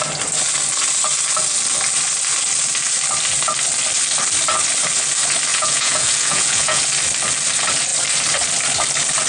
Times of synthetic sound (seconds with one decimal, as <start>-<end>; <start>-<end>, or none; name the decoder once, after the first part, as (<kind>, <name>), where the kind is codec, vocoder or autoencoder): 5.5-6.8 (vocoder, Vocos)